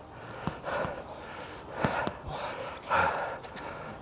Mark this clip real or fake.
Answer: real